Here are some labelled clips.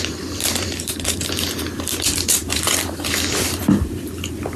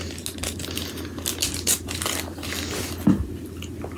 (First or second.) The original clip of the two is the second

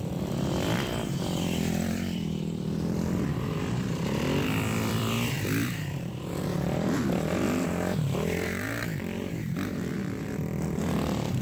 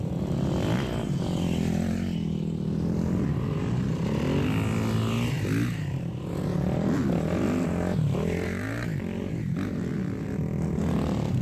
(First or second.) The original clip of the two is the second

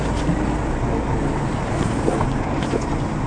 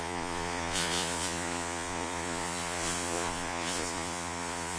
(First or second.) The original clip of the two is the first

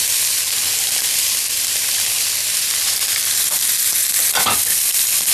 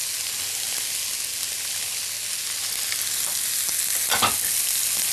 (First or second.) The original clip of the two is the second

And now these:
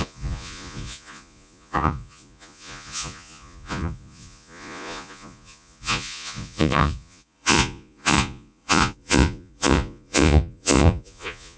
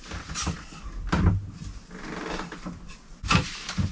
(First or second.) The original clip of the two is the second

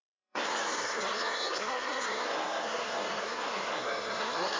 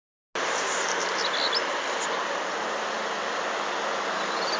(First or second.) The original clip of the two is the second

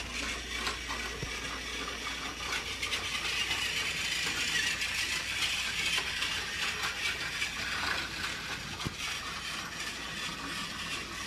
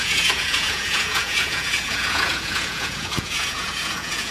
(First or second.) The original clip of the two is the first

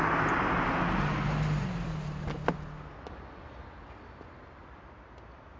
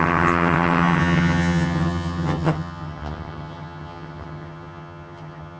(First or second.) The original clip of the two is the first